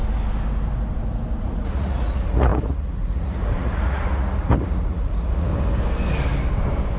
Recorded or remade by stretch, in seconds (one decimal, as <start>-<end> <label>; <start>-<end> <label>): 0.0-1.4 recorded; 1.4-5.5 remade; 5.5-7.0 recorded